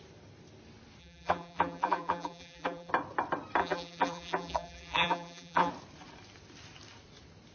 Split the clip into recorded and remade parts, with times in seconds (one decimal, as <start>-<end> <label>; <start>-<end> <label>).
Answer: 0.0-1.0 recorded; 1.0-2.9 remade; 2.9-3.6 recorded; 3.6-5.7 remade; 5.7-7.5 recorded